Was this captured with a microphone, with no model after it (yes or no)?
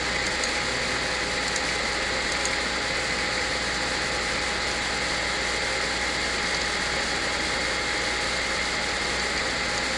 yes